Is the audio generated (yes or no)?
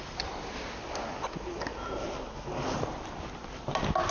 no